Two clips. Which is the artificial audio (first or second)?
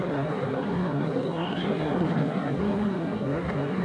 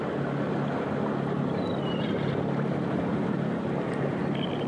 first